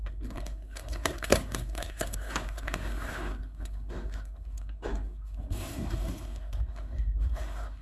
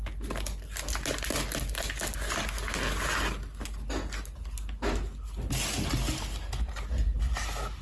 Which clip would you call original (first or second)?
second